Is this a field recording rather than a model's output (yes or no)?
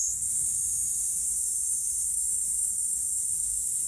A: no